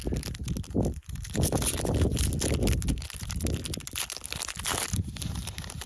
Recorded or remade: recorded